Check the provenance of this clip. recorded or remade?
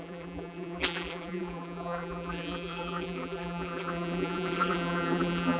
remade